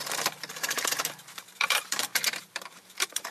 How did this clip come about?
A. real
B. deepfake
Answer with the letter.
B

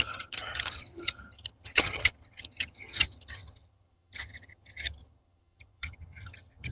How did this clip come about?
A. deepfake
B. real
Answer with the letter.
A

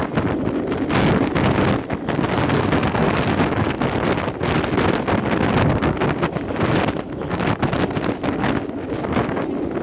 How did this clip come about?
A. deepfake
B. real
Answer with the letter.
B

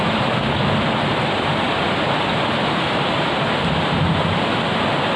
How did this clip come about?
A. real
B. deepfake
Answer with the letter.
A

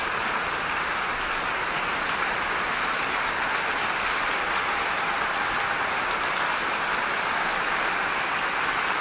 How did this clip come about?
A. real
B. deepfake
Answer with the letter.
A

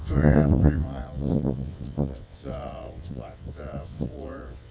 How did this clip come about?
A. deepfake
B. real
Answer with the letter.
A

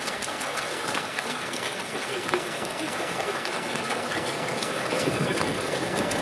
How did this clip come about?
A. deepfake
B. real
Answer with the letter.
A